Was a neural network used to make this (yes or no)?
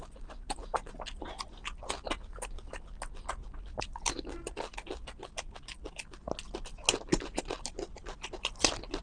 no